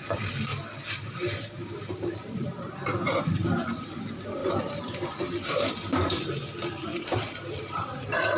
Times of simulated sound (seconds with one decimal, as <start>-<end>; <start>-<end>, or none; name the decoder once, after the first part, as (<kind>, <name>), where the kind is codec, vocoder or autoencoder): 0.5-3.0 (vocoder, BigVGAN v2); 4.4-5.1; 6.9-8.4